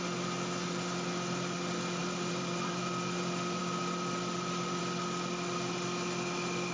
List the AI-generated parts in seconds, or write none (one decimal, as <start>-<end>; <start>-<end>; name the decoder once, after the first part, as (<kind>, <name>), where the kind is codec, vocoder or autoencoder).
2.0-2.8 (vocoder, BigVGAN v2)